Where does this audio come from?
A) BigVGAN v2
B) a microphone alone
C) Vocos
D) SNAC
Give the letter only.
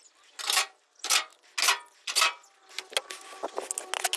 B